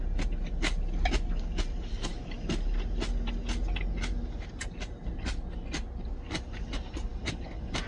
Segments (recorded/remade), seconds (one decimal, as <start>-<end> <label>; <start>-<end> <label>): 0.0-7.9 recorded

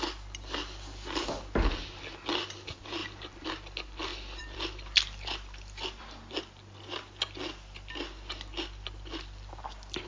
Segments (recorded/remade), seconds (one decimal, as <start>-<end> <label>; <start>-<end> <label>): 0.0-3.0 recorded; 3.0-3.5 remade; 3.5-4.1 recorded; 4.1-6.4 remade; 6.4-10.1 recorded

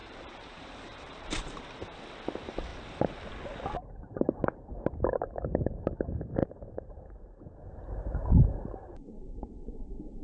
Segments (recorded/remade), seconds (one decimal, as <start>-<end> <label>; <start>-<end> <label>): 0.0-1.6 remade; 1.6-6.4 recorded; 6.4-7.4 remade; 7.4-8.8 recorded; 8.8-9.7 remade; 9.7-10.2 recorded